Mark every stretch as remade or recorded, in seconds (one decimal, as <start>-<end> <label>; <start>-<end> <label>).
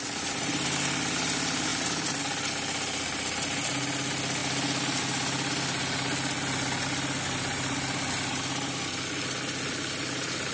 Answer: 0.0-10.5 recorded